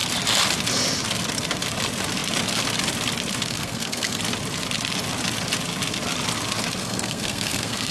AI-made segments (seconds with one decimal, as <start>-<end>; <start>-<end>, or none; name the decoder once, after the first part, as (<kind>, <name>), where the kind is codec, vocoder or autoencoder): 3.5-4.2 (codec, SNAC); 6.8-7.9